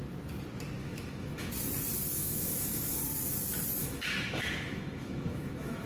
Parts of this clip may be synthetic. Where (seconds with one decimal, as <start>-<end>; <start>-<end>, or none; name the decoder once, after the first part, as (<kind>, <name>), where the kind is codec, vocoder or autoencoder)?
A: 0.8-1.5 (autoencoder, DAC-VAE); 2.1-3.0; 3.8-5.9